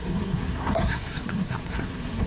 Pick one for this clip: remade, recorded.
remade